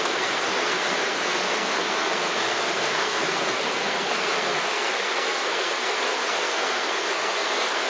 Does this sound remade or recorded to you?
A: remade